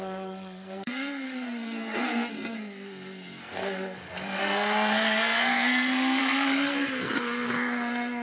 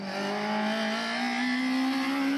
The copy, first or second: first